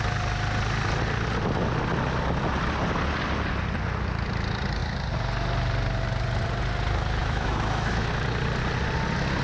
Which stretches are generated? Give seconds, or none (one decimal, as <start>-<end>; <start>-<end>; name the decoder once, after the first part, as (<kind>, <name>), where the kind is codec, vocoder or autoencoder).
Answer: 7.2-8.1 (autoencoder, DAC-VAE)